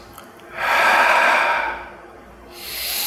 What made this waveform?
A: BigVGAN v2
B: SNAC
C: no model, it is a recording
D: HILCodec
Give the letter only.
C